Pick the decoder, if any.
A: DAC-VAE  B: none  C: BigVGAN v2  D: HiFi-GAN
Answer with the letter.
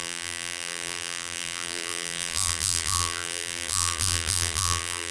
C